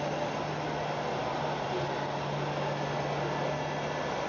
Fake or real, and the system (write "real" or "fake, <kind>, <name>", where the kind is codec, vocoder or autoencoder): real